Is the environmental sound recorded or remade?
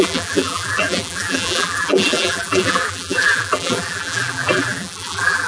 remade